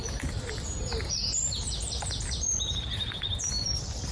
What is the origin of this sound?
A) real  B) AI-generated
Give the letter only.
A